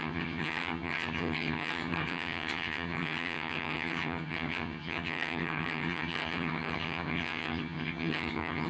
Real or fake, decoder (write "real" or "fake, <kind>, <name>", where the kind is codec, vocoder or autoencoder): fake, vocoder, HiFi-GAN